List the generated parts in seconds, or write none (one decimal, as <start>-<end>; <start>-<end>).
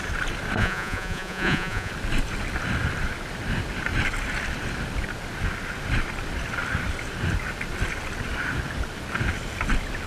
0.6-1.9